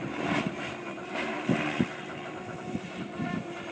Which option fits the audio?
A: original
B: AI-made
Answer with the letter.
B